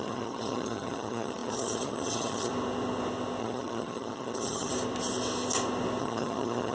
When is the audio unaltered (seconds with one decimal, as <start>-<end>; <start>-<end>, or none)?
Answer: 2.5-3.4; 4.7-6.0